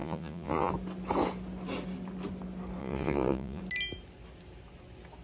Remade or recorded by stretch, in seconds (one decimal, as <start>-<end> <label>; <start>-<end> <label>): 0.0-0.7 remade; 0.7-2.8 recorded; 2.8-3.6 remade; 3.6-5.2 recorded